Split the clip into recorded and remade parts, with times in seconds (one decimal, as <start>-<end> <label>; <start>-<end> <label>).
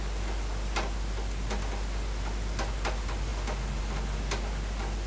0.0-5.1 recorded